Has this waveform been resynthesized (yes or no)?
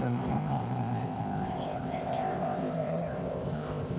yes